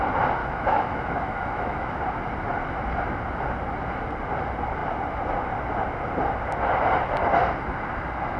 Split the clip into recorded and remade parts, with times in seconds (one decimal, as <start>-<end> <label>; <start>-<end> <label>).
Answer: 0.0-0.4 recorded; 0.4-2.0 remade; 2.0-8.4 recorded